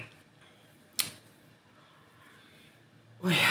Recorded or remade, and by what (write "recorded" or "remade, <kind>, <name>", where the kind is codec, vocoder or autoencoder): recorded